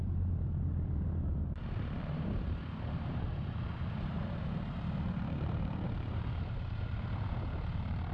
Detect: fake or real fake